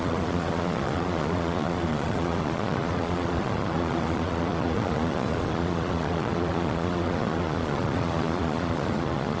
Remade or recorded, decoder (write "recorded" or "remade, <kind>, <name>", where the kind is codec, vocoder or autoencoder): remade, vocoder, Vocos